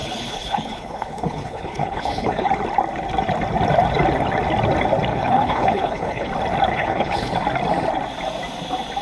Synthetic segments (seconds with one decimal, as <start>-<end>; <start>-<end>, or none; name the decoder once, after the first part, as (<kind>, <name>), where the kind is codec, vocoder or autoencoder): 0.0-2.5 (codec, HILCodec); 5.1-6.3; 6.7-7.3